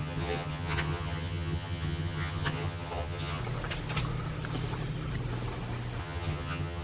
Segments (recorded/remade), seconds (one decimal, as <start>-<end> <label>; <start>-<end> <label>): 0.0-3.4 remade; 3.4-6.0 recorded; 6.0-6.8 remade